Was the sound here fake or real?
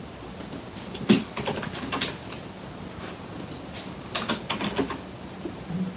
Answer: real